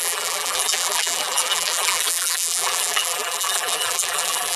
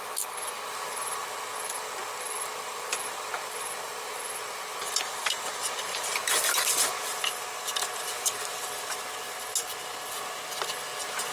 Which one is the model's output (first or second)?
first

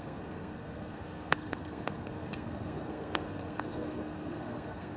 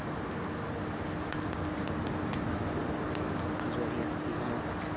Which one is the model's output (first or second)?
first